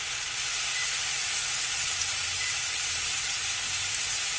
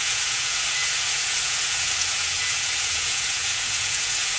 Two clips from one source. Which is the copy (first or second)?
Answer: second